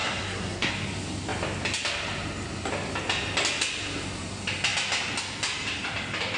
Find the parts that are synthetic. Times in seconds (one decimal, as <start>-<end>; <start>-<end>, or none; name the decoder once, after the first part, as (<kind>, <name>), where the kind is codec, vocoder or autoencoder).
0.0-0.7 (codec, SNAC)